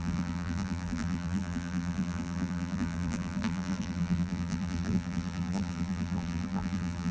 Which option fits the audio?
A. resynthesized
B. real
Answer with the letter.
A